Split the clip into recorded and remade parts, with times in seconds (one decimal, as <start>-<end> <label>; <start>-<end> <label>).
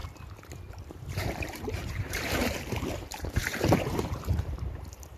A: 0.0-0.7 recorded; 0.7-5.2 remade